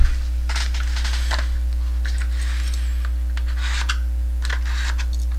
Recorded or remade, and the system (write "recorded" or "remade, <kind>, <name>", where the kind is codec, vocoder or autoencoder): recorded